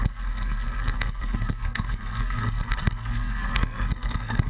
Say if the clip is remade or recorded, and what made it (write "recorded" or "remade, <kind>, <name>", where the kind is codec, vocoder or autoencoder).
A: remade, codec, SNAC